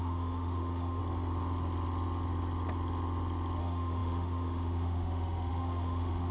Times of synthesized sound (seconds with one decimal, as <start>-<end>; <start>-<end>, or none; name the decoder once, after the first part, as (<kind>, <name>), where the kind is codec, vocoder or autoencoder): 0.0-1.0 (autoencoder, DAC-VAE); 3.6-6.3